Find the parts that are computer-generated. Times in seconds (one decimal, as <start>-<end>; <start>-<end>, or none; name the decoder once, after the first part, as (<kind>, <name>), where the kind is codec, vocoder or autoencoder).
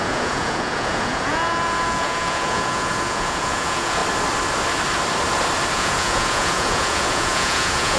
0.0-4.0 (vocoder, Vocos); 5.7-8.0